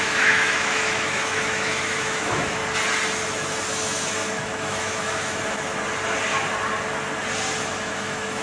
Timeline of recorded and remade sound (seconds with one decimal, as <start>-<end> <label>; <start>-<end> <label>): 0.0-2.6 remade; 2.6-3.7 recorded; 3.7-5.7 remade; 5.7-7.6 recorded; 7.6-8.4 remade